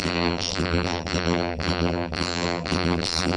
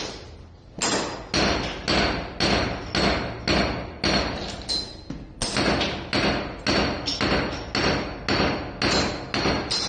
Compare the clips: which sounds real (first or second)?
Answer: second